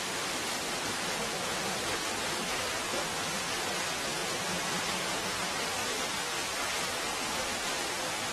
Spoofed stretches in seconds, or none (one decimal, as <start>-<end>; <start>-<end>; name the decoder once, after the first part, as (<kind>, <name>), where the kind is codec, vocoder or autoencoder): 4.2-5.2 (vocoder, BigVGAN v2); 5.8-7.6